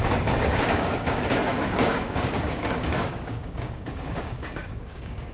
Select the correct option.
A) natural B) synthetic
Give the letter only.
B